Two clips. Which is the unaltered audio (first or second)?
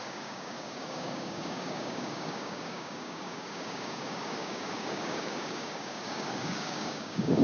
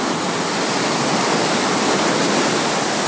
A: second